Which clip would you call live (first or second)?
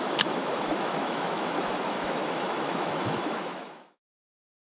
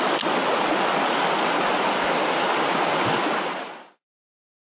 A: second